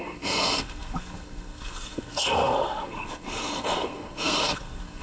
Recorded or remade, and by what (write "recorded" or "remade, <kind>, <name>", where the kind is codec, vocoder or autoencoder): remade, codec, SNAC